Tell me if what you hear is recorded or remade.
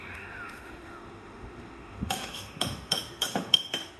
remade